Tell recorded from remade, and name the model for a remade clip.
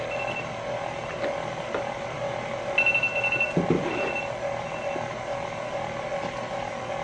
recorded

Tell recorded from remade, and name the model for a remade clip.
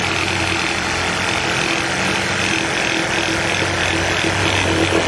recorded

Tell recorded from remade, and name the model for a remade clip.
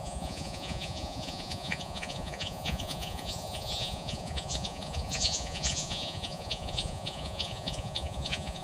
remade, vocoder, Vocos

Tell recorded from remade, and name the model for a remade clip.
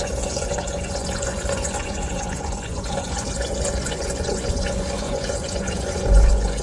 remade, vocoder, Vocos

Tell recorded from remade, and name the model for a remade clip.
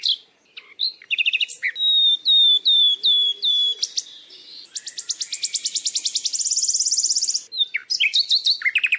recorded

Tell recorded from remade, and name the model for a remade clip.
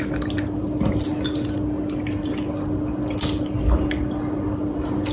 recorded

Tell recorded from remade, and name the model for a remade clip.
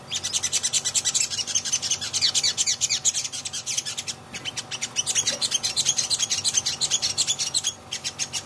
recorded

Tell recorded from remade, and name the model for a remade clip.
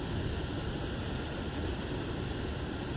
recorded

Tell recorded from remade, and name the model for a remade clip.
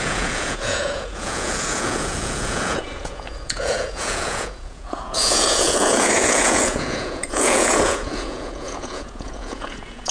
remade, vocoder, Vocos